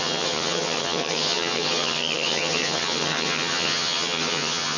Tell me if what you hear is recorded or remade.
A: remade